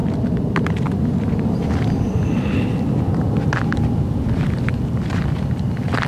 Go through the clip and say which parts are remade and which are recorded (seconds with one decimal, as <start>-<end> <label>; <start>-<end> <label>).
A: 0.0-6.1 recorded